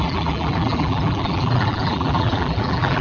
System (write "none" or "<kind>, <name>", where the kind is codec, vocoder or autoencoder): vocoder, BigVGAN v2